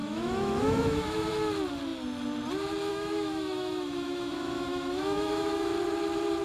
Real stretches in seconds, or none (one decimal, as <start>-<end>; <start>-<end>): 1.3-2.9; 5.7-6.4